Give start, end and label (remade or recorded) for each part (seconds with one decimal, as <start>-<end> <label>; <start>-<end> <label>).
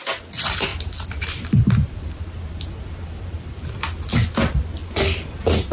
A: 0.0-0.7 recorded; 0.7-4.1 remade; 4.1-5.7 recorded